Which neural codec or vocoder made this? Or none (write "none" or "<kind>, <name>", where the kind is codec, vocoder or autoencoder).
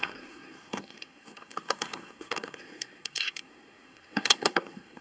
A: codec, SNAC